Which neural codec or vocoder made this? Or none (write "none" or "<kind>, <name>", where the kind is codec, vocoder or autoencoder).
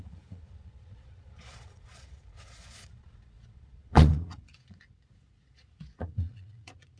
vocoder, Vocos